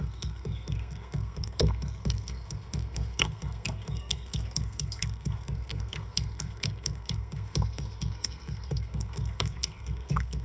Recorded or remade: remade